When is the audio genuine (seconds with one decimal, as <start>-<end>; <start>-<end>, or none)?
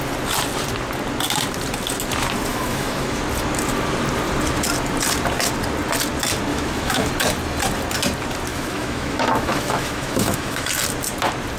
0.0-2.5; 3.2-6.5; 7.1-8.5; 10.7-11.6